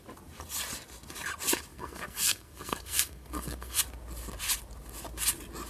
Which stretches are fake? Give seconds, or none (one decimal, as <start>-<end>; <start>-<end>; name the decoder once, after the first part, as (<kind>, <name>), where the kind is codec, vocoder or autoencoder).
1.7-3.8 (codec, SNAC)